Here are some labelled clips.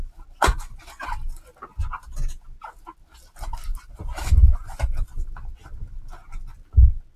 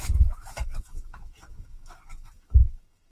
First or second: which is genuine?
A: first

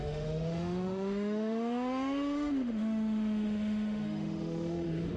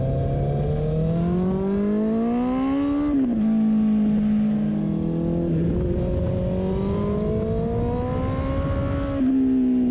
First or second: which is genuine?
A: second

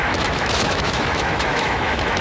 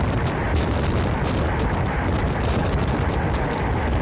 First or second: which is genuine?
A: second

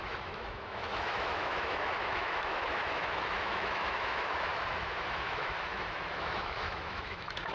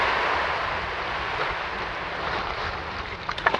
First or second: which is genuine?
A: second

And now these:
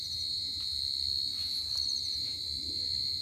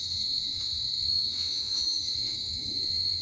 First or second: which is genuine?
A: first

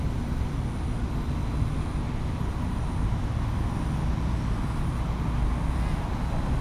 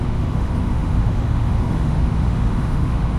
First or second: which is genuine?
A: first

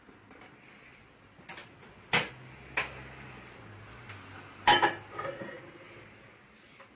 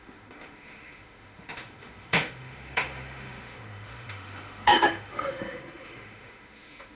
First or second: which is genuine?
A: first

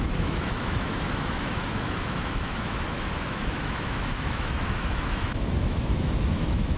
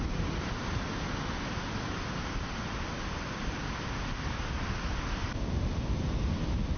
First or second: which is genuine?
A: second